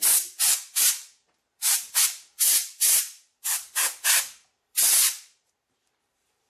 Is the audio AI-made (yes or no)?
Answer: yes